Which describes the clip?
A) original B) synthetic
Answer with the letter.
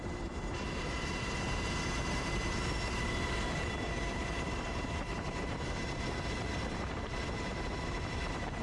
B